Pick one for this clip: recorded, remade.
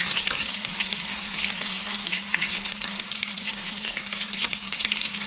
remade